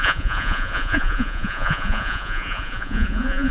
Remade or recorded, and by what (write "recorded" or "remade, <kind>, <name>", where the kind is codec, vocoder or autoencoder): remade, vocoder, Vocos